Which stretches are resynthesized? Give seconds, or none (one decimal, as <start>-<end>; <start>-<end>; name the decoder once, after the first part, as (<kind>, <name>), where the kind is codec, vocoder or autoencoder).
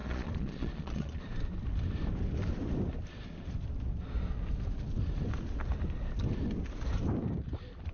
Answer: 0.0-1.2 (vocoder, Vocos)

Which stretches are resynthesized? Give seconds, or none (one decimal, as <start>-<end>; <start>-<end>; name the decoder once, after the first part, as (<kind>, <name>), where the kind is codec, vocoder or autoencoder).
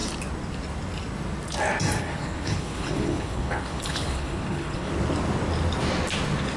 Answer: 2.0-4.9 (codec, HILCodec)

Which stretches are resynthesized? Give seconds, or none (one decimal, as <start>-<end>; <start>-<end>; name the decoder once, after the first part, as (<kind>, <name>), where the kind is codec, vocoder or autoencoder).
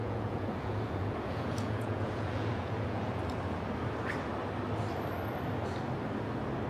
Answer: 0.0-3.2 (vocoder, Vocos)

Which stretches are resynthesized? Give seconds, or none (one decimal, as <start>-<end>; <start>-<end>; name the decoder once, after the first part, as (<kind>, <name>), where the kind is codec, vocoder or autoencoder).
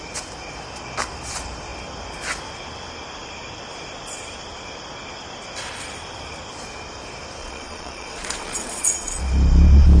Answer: 7.4-9.2 (vocoder, Vocos)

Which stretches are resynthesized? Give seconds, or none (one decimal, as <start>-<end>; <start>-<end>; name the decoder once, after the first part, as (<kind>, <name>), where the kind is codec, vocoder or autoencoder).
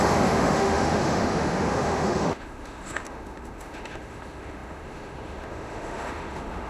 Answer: 0.0-6.7 (autoencoder, DAC-VAE)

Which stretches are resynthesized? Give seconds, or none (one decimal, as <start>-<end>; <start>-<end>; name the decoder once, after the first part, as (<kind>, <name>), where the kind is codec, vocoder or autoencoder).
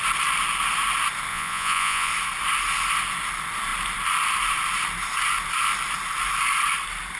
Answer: 1.3-2.1 (vocoder, Vocos)